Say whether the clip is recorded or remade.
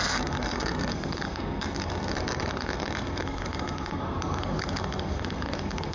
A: remade